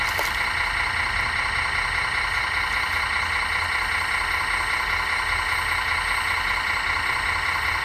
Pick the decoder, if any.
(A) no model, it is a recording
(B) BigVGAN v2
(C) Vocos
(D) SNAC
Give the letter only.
A